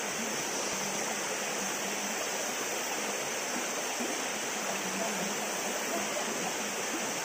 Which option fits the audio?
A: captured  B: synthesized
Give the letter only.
A